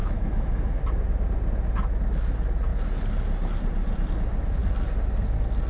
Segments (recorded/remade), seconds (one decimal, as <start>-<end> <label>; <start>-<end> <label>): 0.0-0.8 remade; 0.8-5.7 recorded